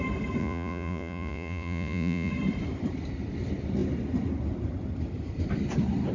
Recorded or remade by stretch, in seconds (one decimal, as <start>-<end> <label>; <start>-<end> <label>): 0.0-0.4 recorded; 0.4-2.3 remade; 2.3-6.1 recorded